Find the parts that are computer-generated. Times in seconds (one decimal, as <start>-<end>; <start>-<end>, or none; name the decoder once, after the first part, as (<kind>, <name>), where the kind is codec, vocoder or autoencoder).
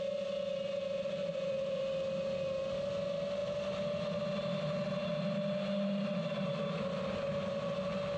1.2-1.8 (vocoder, Vocos)